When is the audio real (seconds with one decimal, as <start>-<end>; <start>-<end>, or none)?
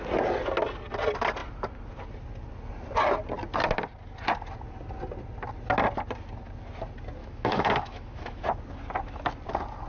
0.0-7.2; 8.4-9.9